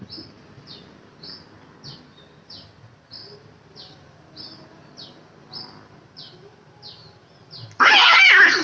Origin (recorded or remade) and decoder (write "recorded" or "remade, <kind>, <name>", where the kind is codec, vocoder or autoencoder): recorded